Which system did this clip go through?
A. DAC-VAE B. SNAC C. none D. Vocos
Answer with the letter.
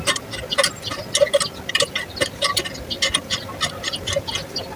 C